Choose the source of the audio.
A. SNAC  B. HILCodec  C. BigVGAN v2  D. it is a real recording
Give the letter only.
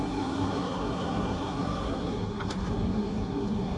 A